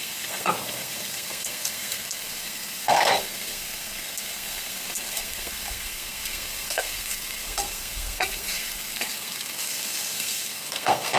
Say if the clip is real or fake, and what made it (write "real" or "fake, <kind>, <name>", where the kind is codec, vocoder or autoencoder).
fake, codec, SNAC